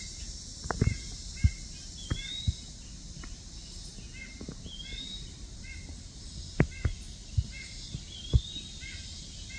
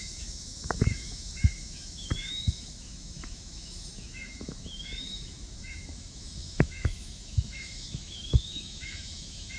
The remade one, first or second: second